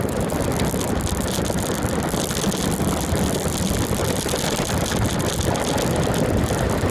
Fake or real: real